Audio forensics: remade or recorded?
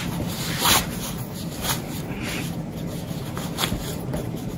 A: remade